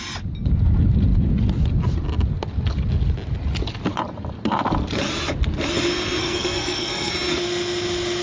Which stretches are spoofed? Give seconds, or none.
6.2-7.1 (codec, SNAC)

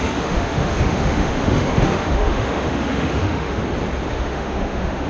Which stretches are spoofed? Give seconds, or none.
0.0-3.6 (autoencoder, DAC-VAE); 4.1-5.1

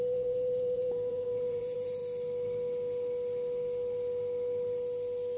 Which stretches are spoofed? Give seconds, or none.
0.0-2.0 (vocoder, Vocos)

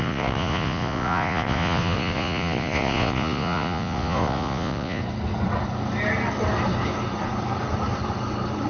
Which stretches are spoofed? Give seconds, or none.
0.0-5.0 (vocoder, Vocos)

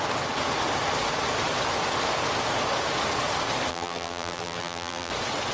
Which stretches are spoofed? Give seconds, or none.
3.7-5.1 (vocoder, BigVGAN v2)

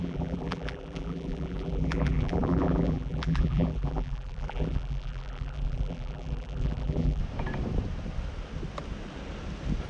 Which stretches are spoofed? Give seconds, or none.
0.0-7.2 (vocoder, BigVGAN v2)

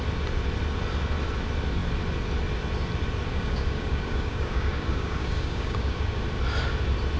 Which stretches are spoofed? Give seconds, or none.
3.3-6.2 (codec, DAC)

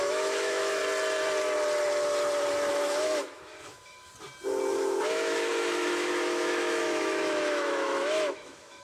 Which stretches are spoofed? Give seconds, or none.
0.0-0.8 (autoencoder, DAC-VAE); 2.7-4.1; 4.7-8.8